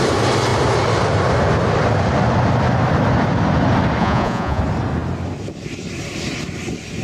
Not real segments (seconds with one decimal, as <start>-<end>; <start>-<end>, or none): 4.0-4.6